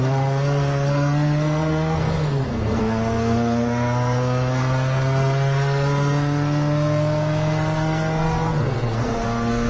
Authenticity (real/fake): fake